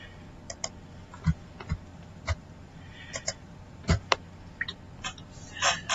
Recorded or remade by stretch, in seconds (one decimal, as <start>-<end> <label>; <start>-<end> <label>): 0.0-1.9 recorded; 1.9-4.1 remade; 4.1-5.9 recorded